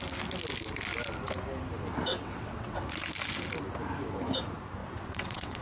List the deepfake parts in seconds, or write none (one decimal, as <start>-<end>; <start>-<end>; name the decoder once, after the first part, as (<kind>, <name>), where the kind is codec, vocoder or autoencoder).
2.1-2.8 (vocoder, WaveNeXt); 4.8-5.6